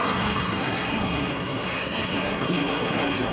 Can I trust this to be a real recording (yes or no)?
no